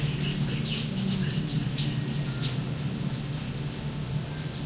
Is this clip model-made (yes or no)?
no